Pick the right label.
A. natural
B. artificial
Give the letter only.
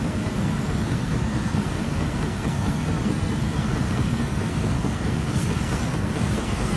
B